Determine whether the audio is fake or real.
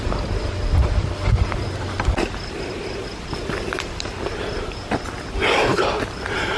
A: real